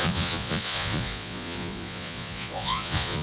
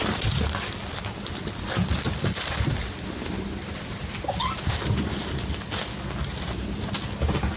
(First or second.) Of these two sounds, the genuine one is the second